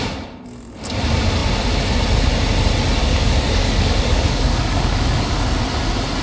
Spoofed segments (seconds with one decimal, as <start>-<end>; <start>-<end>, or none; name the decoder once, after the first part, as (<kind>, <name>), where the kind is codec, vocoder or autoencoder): 3.0-5.6 (codec, DAC)